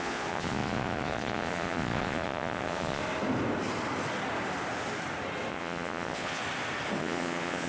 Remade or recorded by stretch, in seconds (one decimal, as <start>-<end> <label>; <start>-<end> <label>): 0.0-3.0 remade; 3.0-5.5 recorded; 5.5-6.4 remade; 6.4-7.0 recorded; 7.0-7.7 remade